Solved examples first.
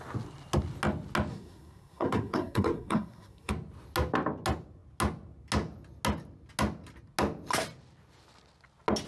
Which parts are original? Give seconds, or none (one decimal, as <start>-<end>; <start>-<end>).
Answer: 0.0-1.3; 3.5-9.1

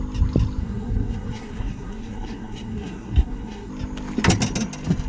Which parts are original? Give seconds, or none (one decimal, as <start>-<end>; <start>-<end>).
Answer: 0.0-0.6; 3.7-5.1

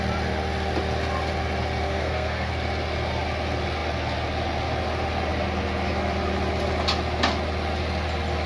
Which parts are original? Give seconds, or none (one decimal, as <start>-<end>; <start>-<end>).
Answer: 0.0-1.8; 2.5-8.5

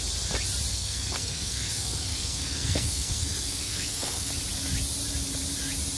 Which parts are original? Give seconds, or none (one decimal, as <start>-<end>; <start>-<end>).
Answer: 0.0-0.7; 4.3-6.0